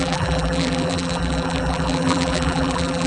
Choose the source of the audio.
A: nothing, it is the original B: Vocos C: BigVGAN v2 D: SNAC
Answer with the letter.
C